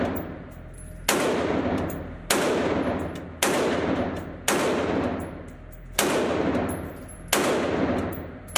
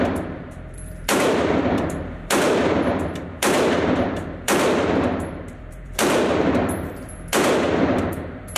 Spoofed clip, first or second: second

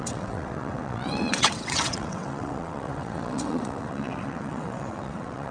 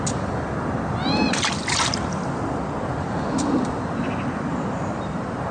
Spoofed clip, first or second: first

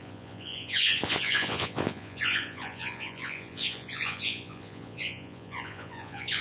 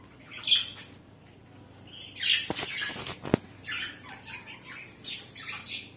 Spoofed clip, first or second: first